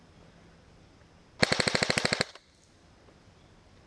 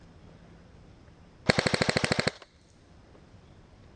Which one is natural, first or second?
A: first